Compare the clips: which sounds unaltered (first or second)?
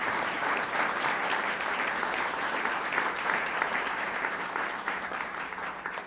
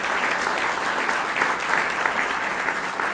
second